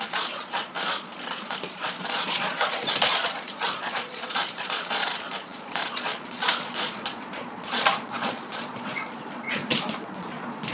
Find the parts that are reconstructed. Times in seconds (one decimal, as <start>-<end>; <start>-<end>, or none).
0.0-10.7